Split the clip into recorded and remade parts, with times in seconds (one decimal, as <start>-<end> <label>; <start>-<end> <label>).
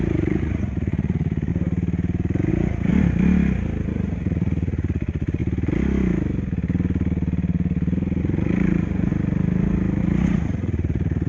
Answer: 0.0-1.5 remade; 1.5-2.5 recorded; 2.5-2.9 remade; 2.9-3.9 recorded; 3.9-5.4 remade; 5.4-8.2 recorded; 8.2-9.1 remade; 9.1-10.0 recorded; 10.0-11.3 remade